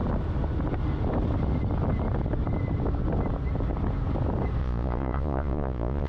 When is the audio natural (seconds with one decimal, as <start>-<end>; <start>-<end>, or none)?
0.0-4.6